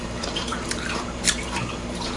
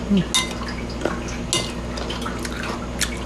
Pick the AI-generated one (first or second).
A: first